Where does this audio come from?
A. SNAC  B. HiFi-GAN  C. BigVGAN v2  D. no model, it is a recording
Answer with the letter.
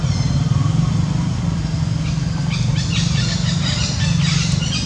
D